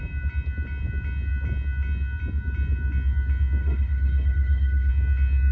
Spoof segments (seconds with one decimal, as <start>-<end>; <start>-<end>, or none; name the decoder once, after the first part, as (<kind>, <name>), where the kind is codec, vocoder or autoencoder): 3.6-4.9 (autoencoder, DAC-VAE)

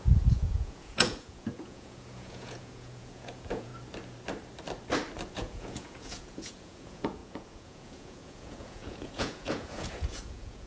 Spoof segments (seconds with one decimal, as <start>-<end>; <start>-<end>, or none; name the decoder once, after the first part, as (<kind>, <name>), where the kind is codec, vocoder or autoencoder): 0.0-3.7 (vocoder, Vocos); 5.3-10.7

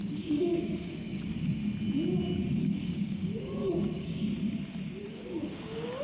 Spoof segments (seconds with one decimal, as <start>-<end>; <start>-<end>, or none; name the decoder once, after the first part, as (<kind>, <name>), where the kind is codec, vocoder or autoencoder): 0.0-1.6 (codec, DAC); 2.6-4.2; 5.0-6.0

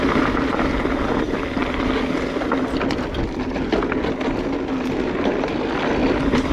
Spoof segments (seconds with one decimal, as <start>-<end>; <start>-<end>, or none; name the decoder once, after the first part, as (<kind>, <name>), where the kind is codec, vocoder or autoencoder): none

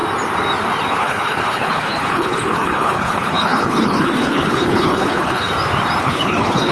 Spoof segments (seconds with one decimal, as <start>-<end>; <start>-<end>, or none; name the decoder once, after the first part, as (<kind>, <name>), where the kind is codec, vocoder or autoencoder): 0.9-5.5 (codec, HILCodec); 6.0-6.7